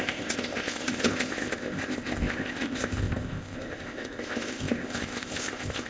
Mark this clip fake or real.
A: fake